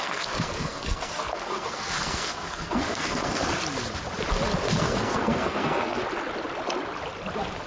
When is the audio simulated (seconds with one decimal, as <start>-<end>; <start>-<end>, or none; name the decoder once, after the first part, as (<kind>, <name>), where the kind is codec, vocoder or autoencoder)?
0.0-3.4 (codec, SNAC); 4.7-6.0